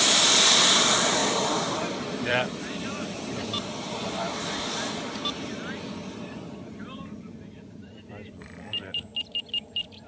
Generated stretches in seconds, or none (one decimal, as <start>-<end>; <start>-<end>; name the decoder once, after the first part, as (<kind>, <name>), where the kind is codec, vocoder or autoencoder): 0.0-9.1 (vocoder, BigVGAN v2); 9.6-10.1